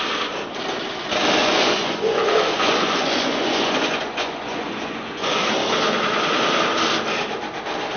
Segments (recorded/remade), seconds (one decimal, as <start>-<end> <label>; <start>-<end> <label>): 0.0-1.4 recorded; 1.4-5.4 remade; 5.4-8.0 recorded